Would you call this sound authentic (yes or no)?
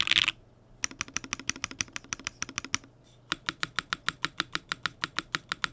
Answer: yes